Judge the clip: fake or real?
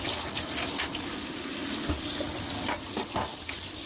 real